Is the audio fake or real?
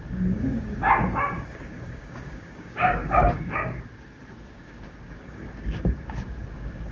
fake